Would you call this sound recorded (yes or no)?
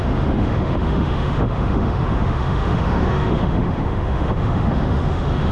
no